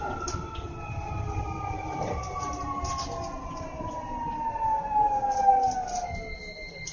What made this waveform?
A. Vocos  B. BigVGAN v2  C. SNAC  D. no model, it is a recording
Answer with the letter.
D